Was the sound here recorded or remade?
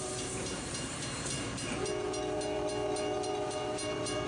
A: remade